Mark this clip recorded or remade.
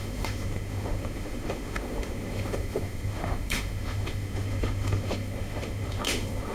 remade